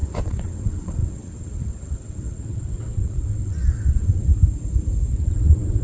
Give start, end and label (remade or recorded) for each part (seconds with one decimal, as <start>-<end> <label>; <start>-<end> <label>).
0.0-4.3 remade; 4.3-5.1 recorded; 5.1-5.8 remade